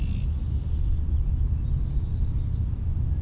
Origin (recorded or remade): recorded